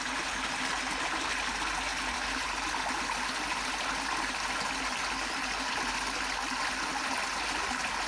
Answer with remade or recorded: recorded